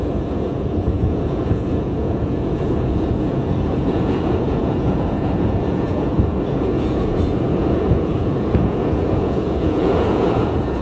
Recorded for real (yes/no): no